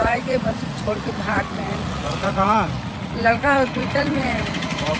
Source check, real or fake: fake